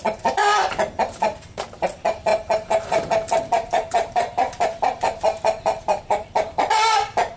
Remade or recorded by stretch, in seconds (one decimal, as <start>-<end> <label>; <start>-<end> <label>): 0.0-7.4 remade